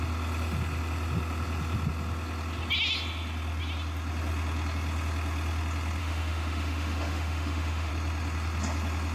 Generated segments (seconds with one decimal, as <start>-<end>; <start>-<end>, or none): 6.0-7.9